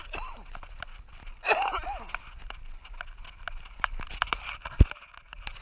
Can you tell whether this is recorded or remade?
recorded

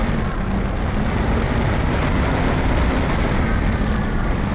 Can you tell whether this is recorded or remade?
recorded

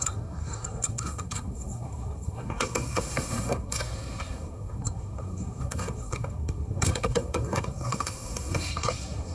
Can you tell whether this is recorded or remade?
remade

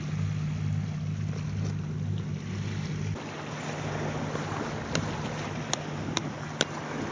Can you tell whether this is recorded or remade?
recorded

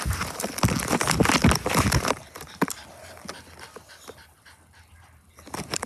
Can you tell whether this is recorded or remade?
recorded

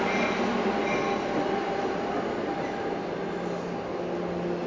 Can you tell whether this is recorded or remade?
recorded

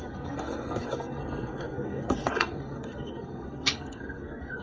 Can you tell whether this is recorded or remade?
remade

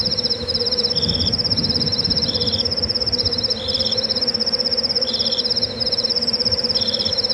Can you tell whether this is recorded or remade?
remade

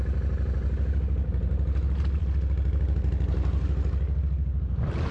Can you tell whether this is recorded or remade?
recorded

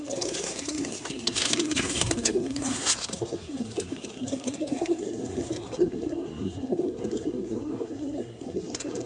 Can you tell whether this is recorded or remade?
remade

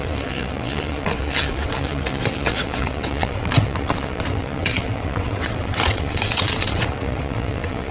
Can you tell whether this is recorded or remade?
remade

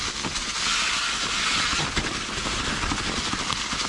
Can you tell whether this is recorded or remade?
recorded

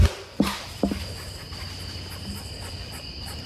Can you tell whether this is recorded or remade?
recorded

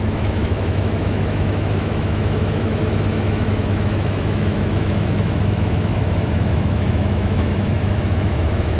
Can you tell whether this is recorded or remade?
remade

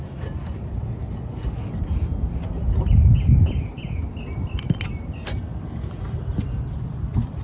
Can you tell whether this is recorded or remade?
recorded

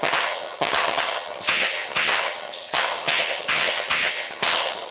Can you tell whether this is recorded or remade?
remade